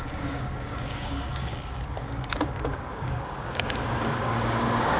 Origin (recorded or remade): remade